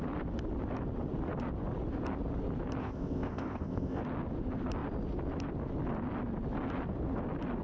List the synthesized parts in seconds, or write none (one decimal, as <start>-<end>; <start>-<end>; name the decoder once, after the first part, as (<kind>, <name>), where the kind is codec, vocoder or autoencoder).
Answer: 2.8-4.0 (codec, ZipCodec)